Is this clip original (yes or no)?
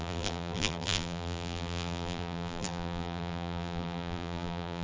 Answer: no